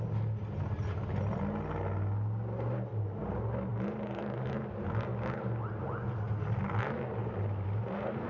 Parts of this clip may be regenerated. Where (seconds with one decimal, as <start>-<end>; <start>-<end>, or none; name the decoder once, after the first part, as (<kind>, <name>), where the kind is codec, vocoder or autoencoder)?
3.7-4.5 (vocoder, BigVGAN v2); 7.2-8.3